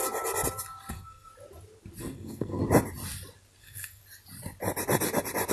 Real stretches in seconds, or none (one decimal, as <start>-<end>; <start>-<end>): 0.0-0.9; 1.3-2.0; 2.6-3.6; 4.0-5.5